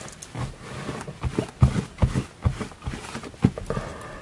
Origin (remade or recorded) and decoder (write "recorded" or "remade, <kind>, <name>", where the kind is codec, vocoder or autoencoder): recorded